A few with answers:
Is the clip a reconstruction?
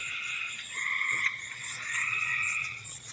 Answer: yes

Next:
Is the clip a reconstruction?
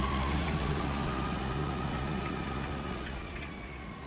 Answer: yes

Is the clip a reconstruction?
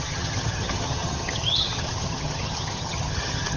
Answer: yes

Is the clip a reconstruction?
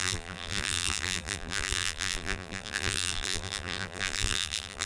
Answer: yes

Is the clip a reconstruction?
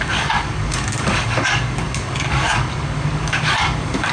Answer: yes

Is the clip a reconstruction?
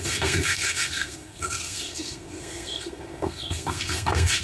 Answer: yes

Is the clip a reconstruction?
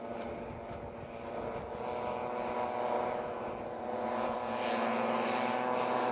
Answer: no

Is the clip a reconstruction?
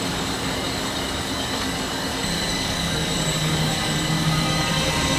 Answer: yes